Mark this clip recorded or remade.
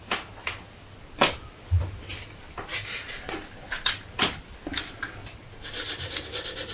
recorded